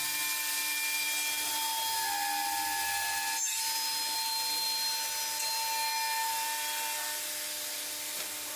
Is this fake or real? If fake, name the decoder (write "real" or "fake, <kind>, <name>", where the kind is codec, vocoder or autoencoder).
real